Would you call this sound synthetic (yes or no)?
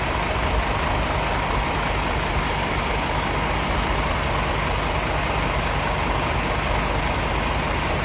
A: no